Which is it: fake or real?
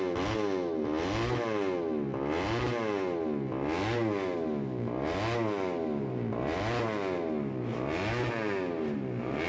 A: real